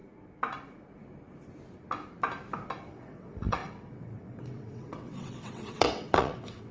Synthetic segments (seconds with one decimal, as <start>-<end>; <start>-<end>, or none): 2.9-6.7